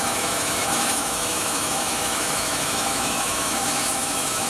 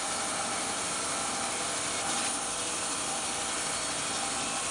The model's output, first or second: first